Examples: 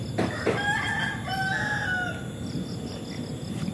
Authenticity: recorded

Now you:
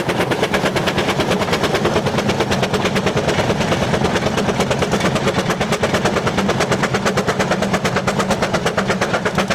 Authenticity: recorded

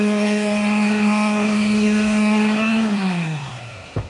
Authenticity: remade